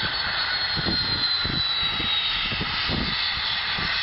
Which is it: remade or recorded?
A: recorded